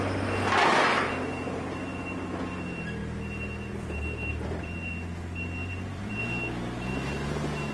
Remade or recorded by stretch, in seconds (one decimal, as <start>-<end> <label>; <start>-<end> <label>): 0.0-4.3 recorded; 4.3-4.9 remade; 4.9-5.6 recorded; 5.6-6.2 remade; 6.2-7.7 recorded